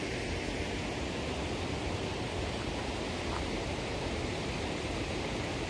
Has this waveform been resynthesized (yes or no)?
no